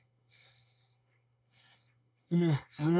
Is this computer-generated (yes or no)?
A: yes